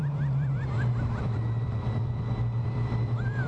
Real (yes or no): no